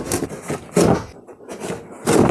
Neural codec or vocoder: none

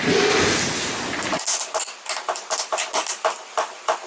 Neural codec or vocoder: none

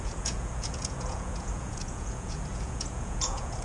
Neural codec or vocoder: vocoder, Vocos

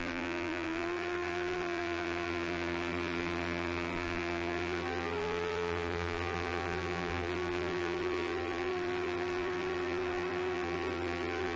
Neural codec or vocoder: vocoder, BigVGAN v2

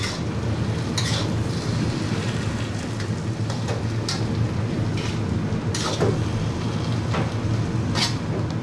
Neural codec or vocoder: none